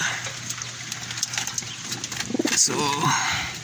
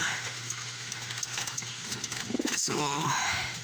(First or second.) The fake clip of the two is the second